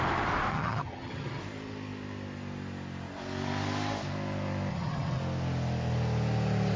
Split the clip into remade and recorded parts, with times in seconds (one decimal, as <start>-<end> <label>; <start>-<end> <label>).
0.0-0.5 recorded; 0.5-1.4 remade; 1.4-4.7 recorded; 4.7-5.2 remade; 5.2-6.8 recorded